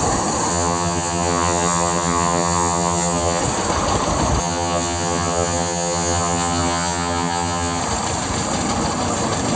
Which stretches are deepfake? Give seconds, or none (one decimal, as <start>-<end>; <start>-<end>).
0.5-3.4; 4.4-7.8